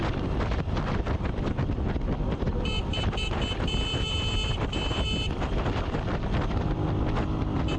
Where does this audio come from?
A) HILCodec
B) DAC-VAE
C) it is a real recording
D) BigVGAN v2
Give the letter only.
D